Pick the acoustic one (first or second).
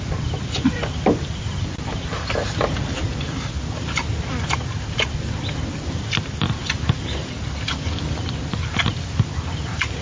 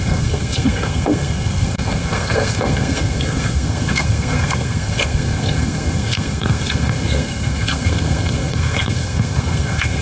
first